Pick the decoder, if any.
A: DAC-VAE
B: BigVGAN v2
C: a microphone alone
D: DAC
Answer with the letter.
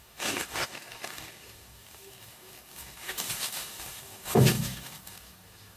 D